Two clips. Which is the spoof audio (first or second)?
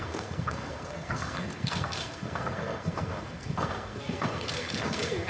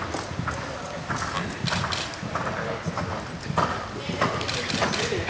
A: first